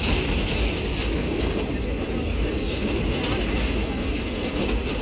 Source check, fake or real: real